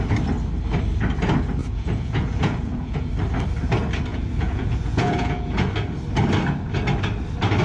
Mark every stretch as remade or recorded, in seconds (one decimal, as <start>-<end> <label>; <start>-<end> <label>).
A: 0.0-1.6 recorded; 1.6-3.1 remade; 3.1-4.1 recorded; 4.1-5.7 remade; 5.7-7.6 recorded